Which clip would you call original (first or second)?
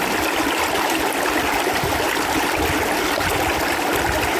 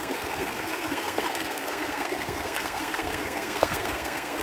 first